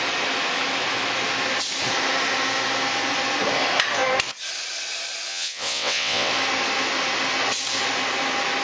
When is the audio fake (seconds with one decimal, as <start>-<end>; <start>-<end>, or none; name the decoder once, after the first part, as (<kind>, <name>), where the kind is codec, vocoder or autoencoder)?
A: 5.3-6.3 (vocoder, WaveNeXt)